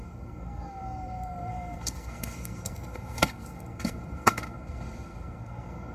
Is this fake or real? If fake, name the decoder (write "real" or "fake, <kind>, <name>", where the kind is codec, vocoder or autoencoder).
fake, codec, SNAC